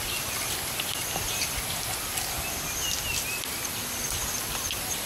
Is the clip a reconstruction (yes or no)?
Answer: no